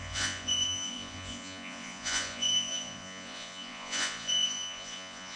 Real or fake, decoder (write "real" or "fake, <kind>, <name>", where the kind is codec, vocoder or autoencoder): fake, vocoder, Vocos